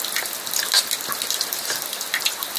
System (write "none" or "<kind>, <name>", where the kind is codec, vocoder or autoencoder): none